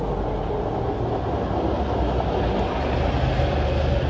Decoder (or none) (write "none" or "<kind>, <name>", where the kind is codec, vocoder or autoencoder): none